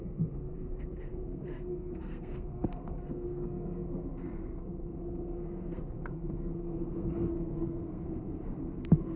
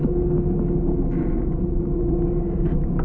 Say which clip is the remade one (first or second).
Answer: first